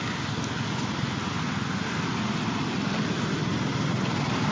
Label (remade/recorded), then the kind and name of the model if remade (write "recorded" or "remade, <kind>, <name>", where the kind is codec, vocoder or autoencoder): recorded